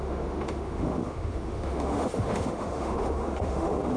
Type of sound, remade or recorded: remade